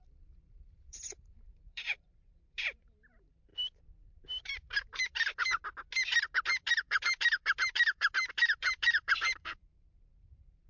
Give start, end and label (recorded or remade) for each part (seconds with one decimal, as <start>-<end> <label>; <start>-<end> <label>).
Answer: 0.0-3.5 remade; 3.5-4.1 recorded; 4.1-5.6 remade; 5.6-6.7 recorded; 6.7-10.7 remade